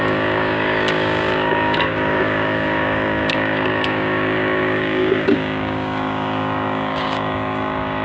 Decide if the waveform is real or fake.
fake